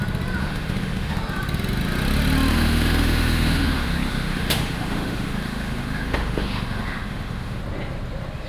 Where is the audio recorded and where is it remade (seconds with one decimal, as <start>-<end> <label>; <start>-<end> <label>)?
0.0-0.4 recorded; 0.4-1.2 remade; 1.2-2.5 recorded; 2.5-7.6 remade; 7.6-8.5 recorded